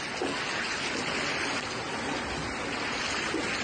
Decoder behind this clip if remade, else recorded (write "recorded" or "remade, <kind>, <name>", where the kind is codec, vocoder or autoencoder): recorded